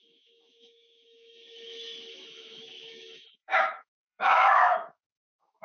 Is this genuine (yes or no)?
no